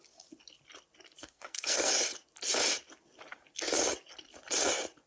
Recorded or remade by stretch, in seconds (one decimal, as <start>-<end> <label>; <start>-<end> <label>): 0.0-1.2 recorded; 1.2-1.9 remade; 1.9-5.1 recorded